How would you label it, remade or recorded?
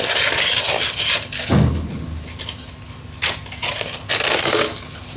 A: recorded